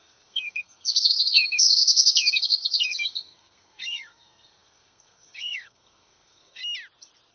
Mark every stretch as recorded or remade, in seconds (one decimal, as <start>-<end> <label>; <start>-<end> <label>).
0.0-6.6 remade; 6.6-7.3 recorded